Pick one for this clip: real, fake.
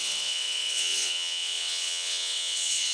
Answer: fake